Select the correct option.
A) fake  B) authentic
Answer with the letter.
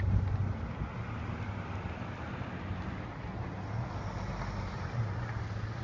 B